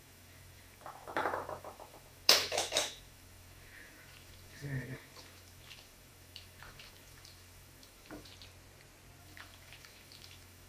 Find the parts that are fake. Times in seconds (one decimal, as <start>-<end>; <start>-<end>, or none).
0.0-8.3; 9.2-10.7